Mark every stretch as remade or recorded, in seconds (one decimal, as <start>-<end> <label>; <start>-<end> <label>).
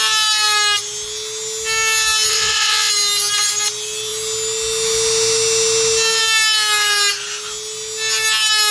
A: 0.0-2.3 recorded; 2.3-2.9 remade; 2.9-8.7 recorded